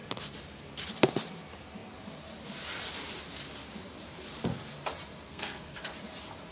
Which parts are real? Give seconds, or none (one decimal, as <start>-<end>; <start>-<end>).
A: 0.0-5.3; 5.8-6.5